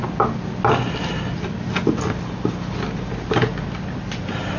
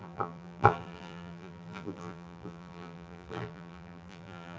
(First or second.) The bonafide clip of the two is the first